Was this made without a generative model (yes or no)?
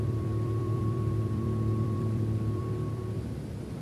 no